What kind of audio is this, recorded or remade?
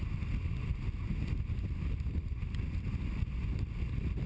recorded